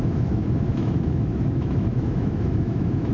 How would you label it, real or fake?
fake